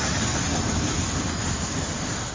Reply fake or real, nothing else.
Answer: fake